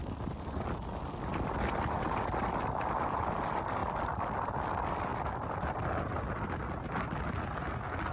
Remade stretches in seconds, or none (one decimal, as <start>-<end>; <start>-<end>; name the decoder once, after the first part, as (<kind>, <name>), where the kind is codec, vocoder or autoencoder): 3.8-4.6 (vocoder, BigVGAN v2); 5.1-6.2